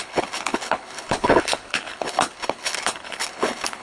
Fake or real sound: fake